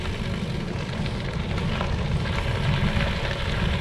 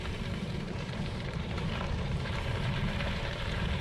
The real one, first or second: first